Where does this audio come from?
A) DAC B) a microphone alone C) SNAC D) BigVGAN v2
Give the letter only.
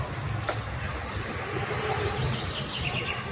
B